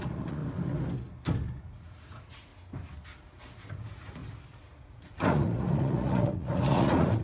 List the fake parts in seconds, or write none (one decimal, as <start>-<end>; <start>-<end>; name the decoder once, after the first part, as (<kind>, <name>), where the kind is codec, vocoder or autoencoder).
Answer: 0.0-0.4 (vocoder, Vocos); 1.6-2.5; 3.7-4.2; 4.8-7.2